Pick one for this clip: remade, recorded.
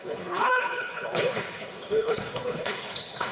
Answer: remade